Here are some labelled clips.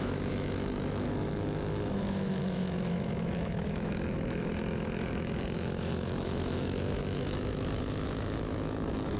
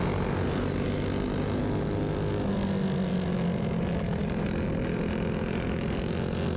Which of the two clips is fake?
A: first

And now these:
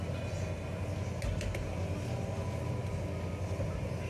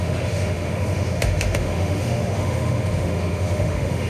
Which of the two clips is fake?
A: second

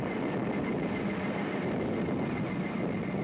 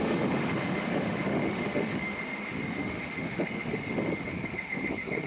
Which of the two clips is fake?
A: second